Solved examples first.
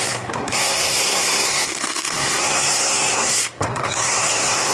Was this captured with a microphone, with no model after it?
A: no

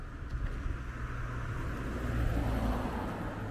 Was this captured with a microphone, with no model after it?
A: yes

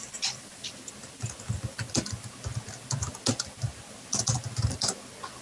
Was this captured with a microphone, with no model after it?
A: yes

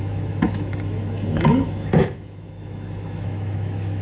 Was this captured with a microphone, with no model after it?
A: no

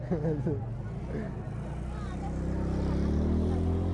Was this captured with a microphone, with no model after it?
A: yes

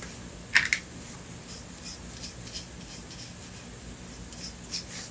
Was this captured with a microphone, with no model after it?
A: yes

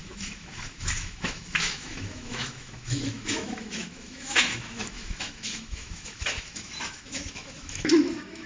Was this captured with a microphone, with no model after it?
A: no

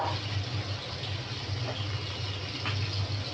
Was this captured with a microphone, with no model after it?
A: yes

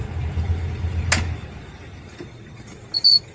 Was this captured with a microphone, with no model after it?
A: yes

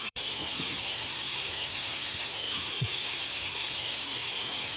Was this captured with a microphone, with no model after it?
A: no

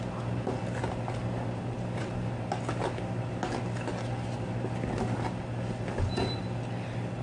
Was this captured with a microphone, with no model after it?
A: yes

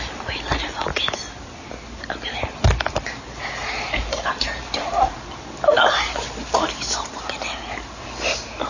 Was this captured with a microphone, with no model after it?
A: yes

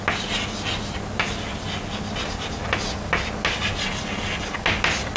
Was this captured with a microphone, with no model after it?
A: yes